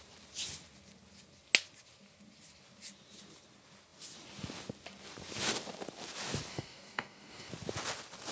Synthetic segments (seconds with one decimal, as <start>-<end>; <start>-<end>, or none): 6.5-7.5